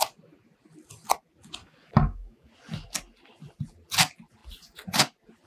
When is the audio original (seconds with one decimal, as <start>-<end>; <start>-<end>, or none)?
0.0-1.6; 2.5-5.5